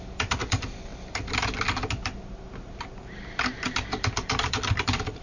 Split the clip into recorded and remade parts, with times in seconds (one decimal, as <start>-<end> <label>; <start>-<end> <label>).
0.0-0.9 remade; 0.9-4.0 recorded; 4.0-5.2 remade